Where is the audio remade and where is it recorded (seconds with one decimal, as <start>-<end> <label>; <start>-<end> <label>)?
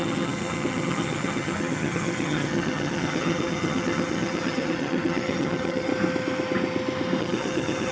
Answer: 0.0-5.9 remade; 5.9-7.2 recorded; 7.2-7.9 remade